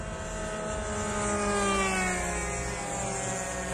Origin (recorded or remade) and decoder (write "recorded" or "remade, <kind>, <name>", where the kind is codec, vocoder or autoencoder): recorded